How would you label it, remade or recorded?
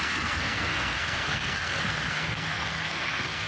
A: remade